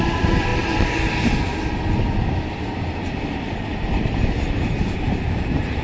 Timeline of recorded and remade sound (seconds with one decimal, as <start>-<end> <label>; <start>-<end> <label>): 0.0-0.5 remade; 0.5-4.0 recorded; 4.0-5.8 remade